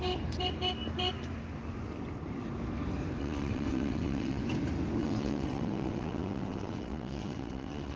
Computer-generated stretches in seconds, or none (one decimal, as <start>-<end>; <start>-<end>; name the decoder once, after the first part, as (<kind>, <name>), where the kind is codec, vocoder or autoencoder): 3.2-4.4 (vocoder, WaveNeXt); 5.0-8.0